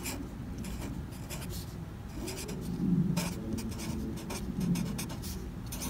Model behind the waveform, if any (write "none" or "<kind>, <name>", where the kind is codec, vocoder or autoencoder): none